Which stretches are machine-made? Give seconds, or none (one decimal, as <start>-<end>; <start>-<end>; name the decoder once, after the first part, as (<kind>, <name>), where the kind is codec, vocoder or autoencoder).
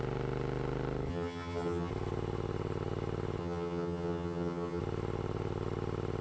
1.1-1.9 (vocoder, HiFi-GAN); 3.4-4.8